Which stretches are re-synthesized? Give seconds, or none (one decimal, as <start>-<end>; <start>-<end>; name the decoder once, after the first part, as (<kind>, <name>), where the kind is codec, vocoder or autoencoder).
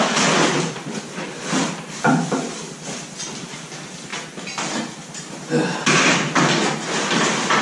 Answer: 0.0-4.1 (vocoder, BigVGAN v2)